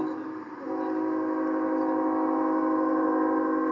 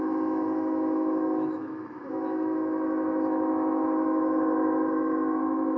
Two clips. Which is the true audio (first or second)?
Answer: first